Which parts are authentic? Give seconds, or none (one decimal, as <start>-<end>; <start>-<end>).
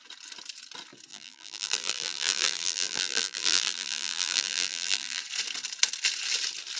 0.0-1.1; 5.2-6.8